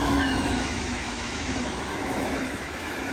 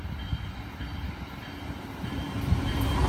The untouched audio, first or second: second